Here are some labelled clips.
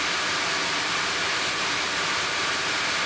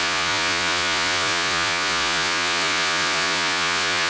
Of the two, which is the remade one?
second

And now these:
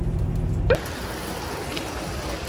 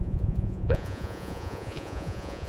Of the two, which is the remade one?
second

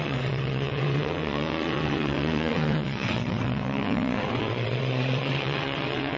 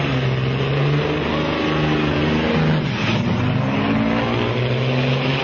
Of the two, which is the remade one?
first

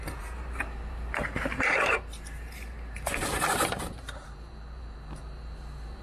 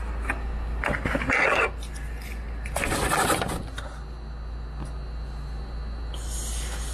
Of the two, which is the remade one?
first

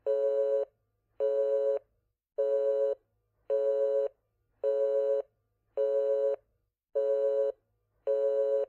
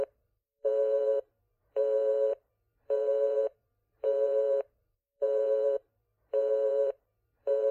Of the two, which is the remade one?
second